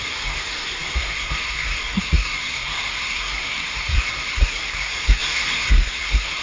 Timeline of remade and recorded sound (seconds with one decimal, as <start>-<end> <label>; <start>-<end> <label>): 0.0-6.4 remade